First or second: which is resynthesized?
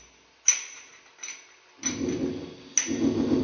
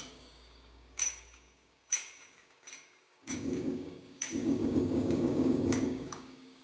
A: second